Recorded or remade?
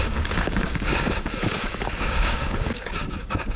remade